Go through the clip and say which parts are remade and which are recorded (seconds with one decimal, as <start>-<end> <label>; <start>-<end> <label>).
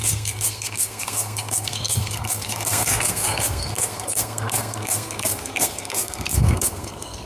0.0-7.3 remade